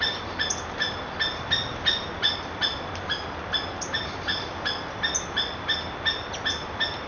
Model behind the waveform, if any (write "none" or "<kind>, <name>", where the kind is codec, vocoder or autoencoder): none